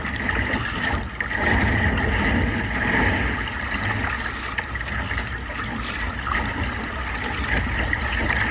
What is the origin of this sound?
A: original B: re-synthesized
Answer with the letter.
A